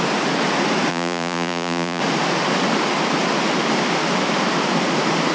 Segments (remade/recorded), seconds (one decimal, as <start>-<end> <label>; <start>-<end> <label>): 0.0-0.9 recorded; 0.9-2.0 remade; 2.0-5.3 recorded